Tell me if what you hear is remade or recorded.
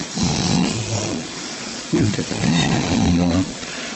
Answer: remade